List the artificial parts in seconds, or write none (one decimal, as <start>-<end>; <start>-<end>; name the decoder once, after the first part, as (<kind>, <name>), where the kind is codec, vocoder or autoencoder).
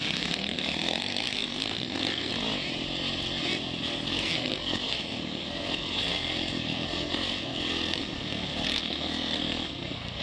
0.0-2.3 (codec, SNAC); 3.8-10.2